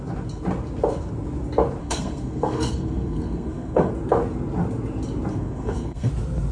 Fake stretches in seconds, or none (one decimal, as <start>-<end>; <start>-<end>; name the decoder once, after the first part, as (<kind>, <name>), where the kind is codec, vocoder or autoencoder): 1.8-3.9 (codec, SNAC); 5.3-6.1